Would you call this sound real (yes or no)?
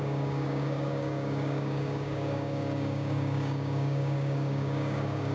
no